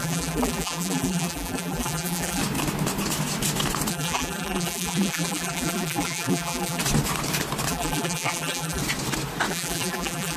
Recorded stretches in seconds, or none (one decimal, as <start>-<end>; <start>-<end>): 2.4-3.9; 6.8-7.7; 8.8-9.5